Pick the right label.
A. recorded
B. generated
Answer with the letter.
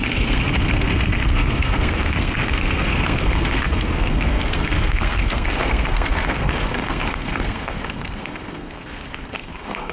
B